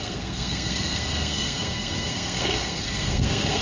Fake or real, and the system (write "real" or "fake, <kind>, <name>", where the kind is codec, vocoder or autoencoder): fake, codec, SNAC